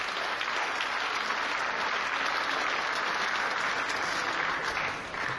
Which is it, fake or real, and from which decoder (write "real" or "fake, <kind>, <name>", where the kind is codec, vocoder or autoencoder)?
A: real